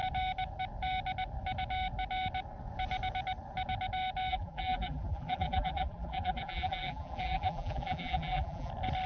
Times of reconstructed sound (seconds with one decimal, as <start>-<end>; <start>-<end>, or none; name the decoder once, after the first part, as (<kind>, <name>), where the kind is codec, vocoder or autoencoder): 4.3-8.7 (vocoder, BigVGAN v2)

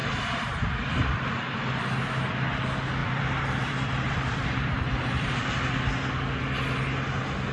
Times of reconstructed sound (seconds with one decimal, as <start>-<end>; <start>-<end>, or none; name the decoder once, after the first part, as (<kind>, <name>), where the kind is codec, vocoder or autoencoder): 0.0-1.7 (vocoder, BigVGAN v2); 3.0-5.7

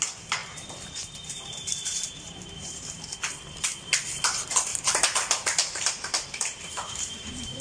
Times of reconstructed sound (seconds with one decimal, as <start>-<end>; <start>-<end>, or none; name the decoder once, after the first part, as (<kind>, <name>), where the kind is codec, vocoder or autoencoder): 0.4-3.0 (vocoder, BigVGAN v2); 4.7-7.6

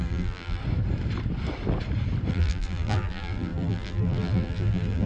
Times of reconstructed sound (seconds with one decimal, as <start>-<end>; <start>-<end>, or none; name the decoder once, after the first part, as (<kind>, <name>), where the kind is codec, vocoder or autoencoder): 0.0-0.6 (vocoder, BigVGAN v2); 2.3-5.1